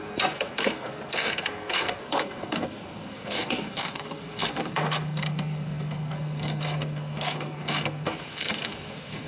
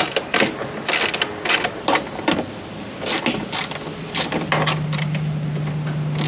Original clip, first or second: second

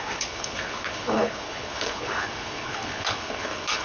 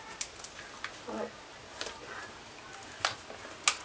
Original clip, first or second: second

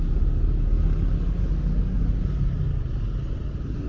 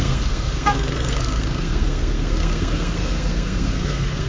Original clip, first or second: first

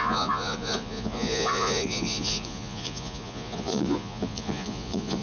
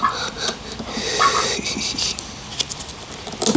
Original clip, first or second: second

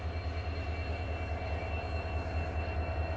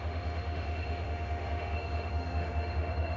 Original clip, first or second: first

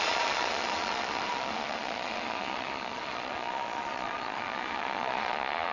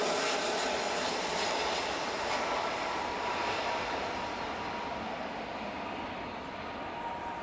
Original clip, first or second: second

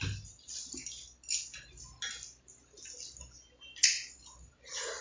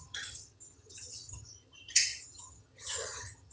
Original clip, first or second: first